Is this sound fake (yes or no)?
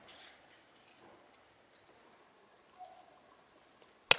no